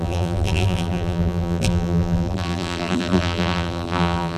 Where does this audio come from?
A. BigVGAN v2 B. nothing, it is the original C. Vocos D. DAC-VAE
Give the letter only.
A